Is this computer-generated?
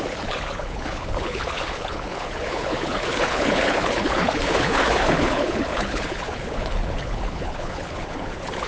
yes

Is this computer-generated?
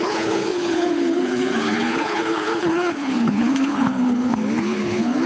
yes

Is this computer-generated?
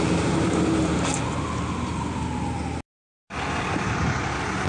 no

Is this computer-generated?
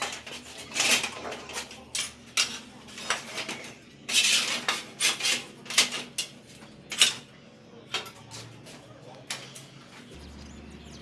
no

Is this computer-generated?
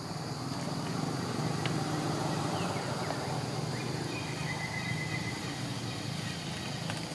no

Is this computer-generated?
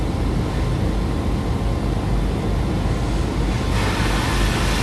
no